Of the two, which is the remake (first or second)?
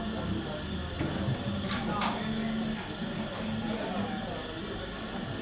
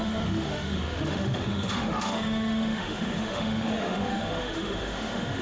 second